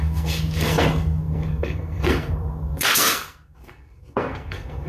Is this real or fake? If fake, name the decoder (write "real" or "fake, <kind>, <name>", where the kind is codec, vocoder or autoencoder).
fake, codec, SNAC